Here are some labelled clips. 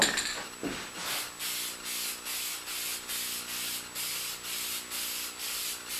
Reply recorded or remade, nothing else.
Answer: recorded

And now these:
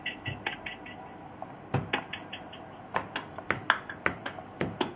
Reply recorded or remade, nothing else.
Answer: recorded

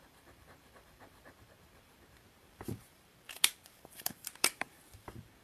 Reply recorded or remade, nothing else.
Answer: remade